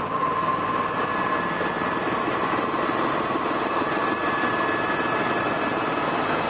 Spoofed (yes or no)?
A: no